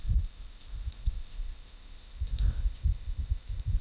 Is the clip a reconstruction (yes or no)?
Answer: yes